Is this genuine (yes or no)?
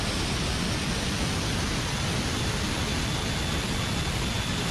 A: yes